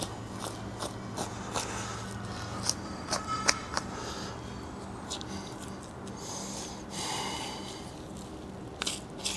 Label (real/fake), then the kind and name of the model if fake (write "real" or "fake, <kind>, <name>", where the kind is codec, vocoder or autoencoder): real